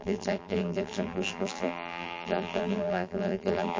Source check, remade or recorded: remade